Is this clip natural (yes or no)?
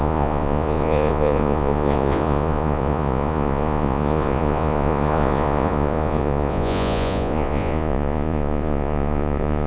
no